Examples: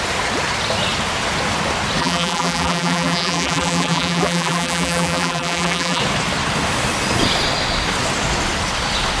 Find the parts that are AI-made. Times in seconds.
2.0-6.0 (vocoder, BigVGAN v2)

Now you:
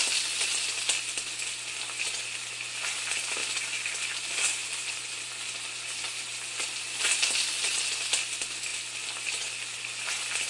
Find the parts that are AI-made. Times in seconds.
3.4-5.3 (vocoder, BigVGAN v2); 6.1-6.7; 8.7-9.8

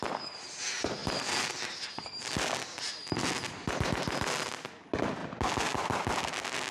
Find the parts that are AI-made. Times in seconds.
1.0-2.9 (vocoder, BigVGAN v2)

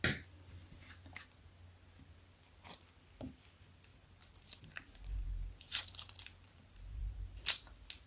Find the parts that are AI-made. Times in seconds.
3.9-7.4 (vocoder, BigVGAN v2)

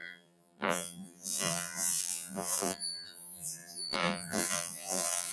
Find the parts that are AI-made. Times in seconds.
0.0-5.3 (vocoder, BigVGAN v2)

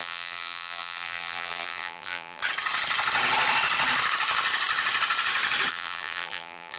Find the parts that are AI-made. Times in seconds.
0.0-2.4 (vocoder, BigVGAN v2); 5.7-6.8